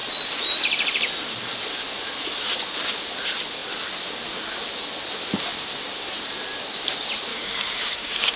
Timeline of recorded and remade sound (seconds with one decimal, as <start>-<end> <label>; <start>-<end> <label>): 0.0-7.3 recorded; 7.3-8.4 remade